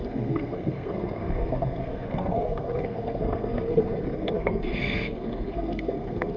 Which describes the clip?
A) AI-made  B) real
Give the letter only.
A